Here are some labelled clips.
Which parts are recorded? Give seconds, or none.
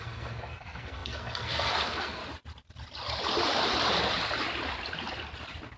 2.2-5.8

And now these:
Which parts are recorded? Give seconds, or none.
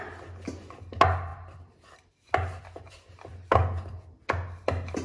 0.0-5.0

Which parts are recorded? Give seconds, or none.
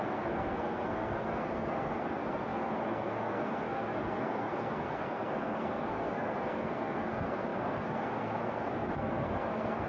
none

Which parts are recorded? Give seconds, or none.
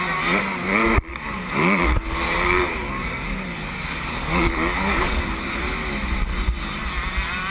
0.0-1.1; 5.6-7.5